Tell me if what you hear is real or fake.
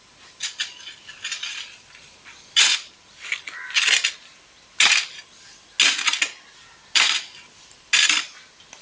real